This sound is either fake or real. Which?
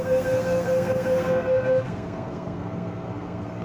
fake